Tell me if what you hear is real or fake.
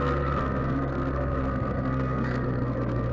fake